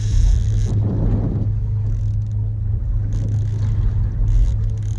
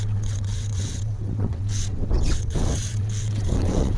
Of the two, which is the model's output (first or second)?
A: second